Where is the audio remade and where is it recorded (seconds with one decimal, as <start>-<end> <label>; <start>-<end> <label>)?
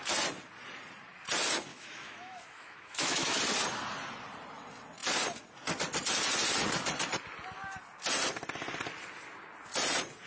0.0-1.7 recorded; 1.7-3.4 remade; 3.4-10.3 recorded